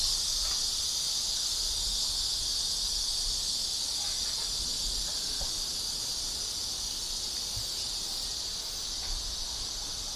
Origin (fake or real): real